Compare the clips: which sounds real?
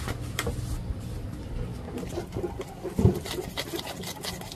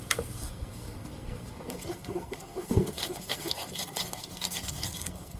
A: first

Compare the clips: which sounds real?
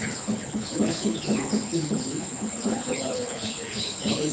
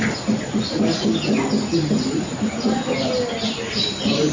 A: second